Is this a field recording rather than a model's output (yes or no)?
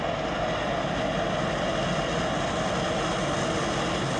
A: yes